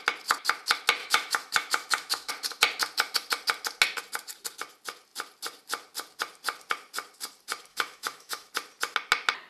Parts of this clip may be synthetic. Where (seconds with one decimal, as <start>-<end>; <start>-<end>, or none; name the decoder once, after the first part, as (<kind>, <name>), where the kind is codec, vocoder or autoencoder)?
1.0-2.3 (autoencoder, DAC-VAE); 7.7-8.5